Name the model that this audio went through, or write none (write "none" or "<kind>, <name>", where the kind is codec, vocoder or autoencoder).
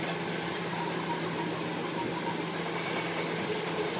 none